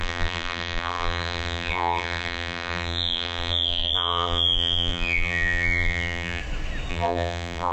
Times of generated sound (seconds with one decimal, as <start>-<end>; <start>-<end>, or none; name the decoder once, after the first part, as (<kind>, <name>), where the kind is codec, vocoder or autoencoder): 0.0-6.4 (vocoder, BigVGAN v2); 6.9-7.7